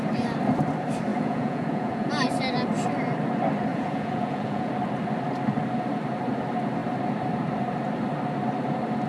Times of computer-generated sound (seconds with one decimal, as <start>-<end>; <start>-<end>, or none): 1.1-2.1; 3.7-4.7